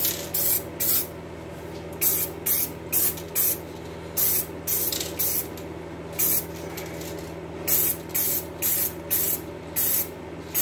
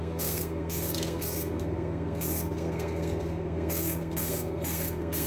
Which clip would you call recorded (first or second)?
first